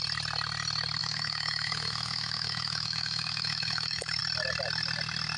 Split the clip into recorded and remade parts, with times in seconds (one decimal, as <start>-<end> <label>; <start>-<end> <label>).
0.0-1.0 recorded; 1.0-4.2 remade; 4.2-5.4 recorded